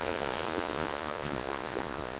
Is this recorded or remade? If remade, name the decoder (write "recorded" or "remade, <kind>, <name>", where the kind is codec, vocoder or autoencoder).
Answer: remade, vocoder, Vocos